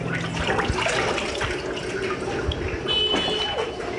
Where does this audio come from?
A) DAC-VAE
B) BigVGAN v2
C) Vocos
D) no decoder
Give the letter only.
D